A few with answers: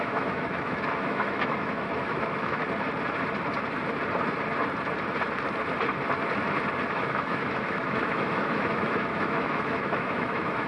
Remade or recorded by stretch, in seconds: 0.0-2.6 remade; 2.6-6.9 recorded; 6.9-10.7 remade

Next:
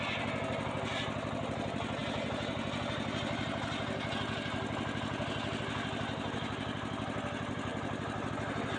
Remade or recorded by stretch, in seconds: 0.0-8.8 recorded

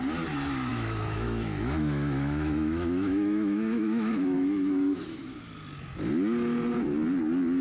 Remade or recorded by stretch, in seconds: 0.0-0.7 recorded; 0.7-5.2 remade; 5.2-7.6 recorded